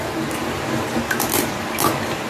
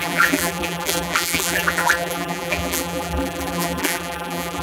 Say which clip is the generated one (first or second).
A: second